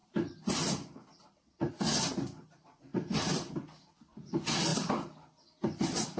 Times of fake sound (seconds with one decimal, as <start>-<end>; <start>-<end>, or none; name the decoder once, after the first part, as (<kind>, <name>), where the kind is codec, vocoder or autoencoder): 0.0-1.7 (vocoder, BigVGAN v2); 2.9-3.5; 4.7-6.2